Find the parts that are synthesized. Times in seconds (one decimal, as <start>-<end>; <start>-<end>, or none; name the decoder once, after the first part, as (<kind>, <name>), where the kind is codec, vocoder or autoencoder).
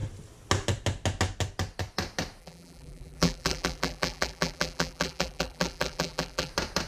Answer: 2.4-6.5 (vocoder, BigVGAN v2)